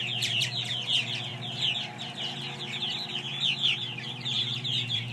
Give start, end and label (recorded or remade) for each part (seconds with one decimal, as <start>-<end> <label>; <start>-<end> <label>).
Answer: 0.0-1.3 remade; 1.3-3.7 recorded; 3.7-5.1 remade